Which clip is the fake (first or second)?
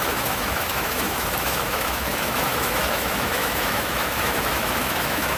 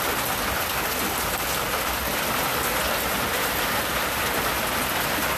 first